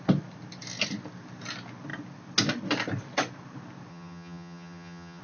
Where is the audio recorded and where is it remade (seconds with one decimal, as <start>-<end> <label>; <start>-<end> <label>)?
0.0-3.9 recorded; 3.9-5.2 remade